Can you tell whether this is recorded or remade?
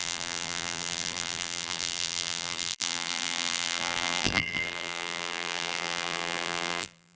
remade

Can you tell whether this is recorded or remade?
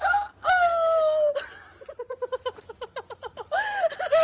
recorded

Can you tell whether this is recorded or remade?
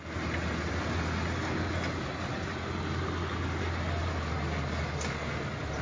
recorded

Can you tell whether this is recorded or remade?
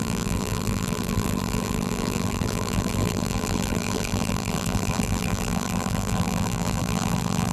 remade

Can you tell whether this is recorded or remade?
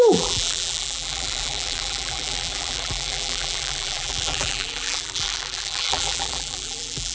remade